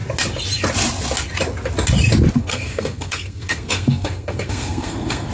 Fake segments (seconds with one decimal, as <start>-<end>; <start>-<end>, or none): 2.4-5.3